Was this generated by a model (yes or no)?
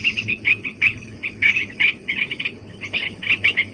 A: yes